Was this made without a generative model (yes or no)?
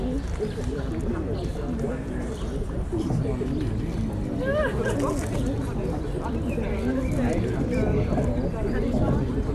yes